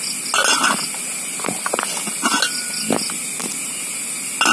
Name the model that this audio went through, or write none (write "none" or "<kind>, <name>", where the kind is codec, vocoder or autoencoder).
none